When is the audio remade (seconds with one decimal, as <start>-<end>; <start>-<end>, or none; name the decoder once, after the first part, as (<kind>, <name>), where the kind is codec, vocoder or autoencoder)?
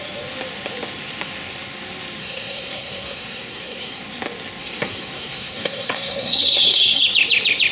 2.2-4.0 (codec, SNAC); 4.6-7.0